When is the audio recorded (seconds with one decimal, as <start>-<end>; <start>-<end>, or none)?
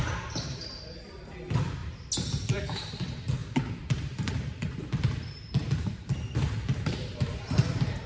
1.8-2.4